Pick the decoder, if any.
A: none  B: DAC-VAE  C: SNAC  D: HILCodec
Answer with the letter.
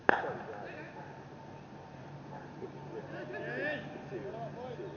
A